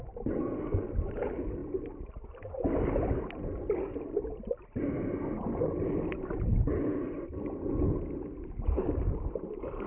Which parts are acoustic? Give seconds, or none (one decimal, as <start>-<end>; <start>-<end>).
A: 0.0-6.5; 7.0-9.9